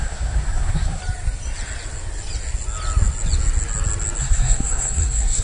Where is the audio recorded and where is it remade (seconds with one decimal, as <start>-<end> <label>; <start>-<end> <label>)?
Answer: 0.0-1.0 remade; 1.0-4.2 recorded; 4.2-5.4 remade